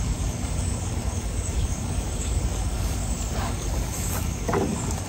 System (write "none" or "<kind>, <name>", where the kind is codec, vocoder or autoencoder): codec, DAC